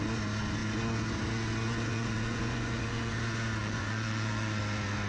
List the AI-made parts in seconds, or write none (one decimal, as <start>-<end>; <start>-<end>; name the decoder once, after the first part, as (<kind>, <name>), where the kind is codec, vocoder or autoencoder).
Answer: 1.9-3.1 (vocoder, Vocos); 3.6-4.6